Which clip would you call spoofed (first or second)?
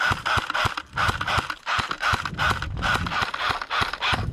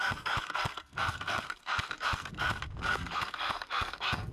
second